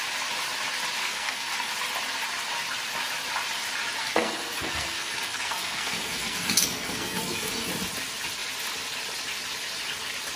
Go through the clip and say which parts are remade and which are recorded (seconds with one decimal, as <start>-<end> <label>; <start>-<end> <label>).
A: 0.0-1.0 recorded; 1.0-1.7 remade; 1.7-4.0 recorded; 4.0-7.7 remade; 7.7-10.4 recorded